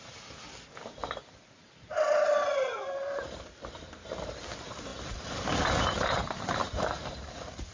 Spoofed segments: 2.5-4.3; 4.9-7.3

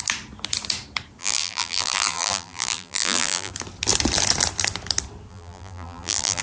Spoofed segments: 1.2-3.5; 5.3-6.4

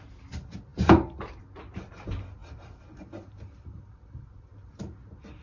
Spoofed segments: 2.4-4.7

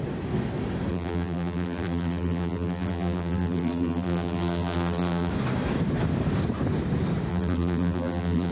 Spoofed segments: 0.9-5.3; 7.3-8.5

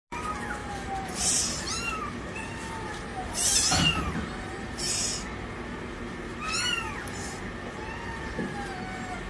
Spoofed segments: 0.6-4.7; 6.3-7.4